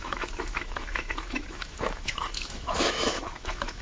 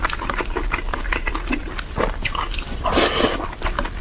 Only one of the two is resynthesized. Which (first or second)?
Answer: first